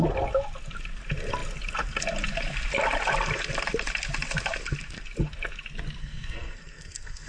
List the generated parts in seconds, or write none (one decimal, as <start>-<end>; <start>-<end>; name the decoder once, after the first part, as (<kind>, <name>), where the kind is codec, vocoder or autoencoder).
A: 6.0-7.3 (codec, SNAC)